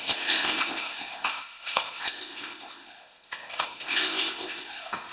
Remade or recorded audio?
remade